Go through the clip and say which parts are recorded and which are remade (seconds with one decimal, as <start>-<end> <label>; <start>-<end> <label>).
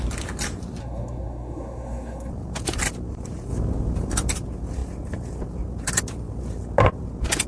0.0-0.8 recorded; 0.8-2.3 remade; 2.3-7.5 recorded